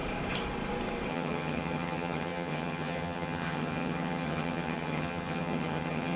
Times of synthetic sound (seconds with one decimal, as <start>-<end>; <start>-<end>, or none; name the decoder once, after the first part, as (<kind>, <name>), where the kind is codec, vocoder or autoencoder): 1.1-6.2 (vocoder, HiFi-GAN)